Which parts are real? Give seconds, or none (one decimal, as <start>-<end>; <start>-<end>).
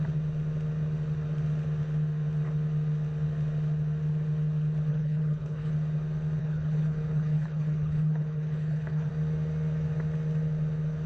0.0-4.9; 5.7-6.4; 9.1-11.1